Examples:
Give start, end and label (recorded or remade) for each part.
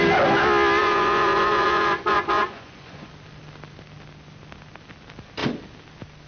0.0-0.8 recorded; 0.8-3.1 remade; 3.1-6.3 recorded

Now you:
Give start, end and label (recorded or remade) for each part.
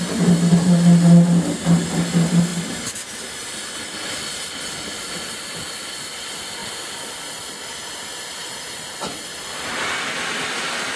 0.0-11.0 recorded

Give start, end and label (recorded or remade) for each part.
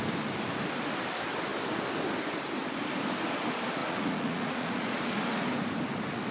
0.0-3.8 recorded; 3.8-5.0 remade; 5.0-6.3 recorded